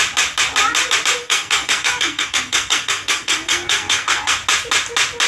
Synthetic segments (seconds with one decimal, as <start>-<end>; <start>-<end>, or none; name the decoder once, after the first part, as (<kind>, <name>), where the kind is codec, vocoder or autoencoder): 1.2-4.4 (codec, SNAC)